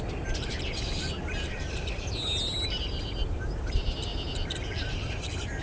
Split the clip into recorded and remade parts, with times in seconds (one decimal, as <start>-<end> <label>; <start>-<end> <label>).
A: 0.0-5.6 recorded